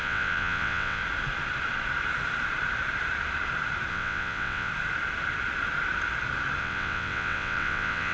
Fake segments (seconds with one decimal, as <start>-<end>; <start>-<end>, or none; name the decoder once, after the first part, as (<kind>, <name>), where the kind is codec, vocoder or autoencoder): 0.0-1.0 (vocoder, WaveNeXt); 3.9-4.7; 6.6-8.1